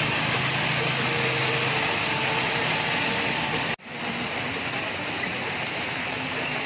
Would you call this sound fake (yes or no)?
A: no